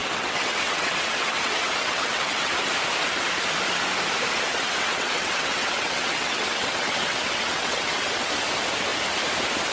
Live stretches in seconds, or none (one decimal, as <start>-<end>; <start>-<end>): 2.5-4.5; 8.3-9.7